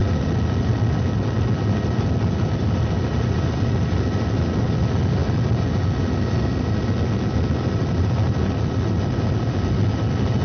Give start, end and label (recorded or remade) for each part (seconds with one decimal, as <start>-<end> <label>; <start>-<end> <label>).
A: 0.0-10.4 recorded